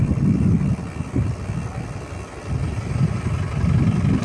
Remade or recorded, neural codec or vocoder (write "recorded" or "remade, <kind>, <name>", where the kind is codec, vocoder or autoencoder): recorded